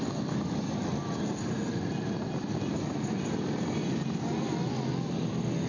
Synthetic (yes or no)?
no